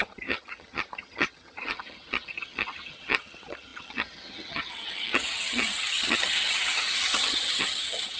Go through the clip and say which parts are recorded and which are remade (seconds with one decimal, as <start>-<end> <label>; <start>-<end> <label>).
0.0-8.2 remade